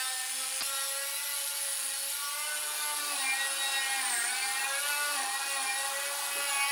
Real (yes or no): yes